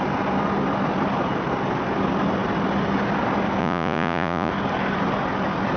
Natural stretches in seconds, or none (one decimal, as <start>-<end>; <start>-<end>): 0.0-3.6; 4.5-5.8